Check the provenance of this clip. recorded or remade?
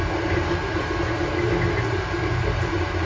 recorded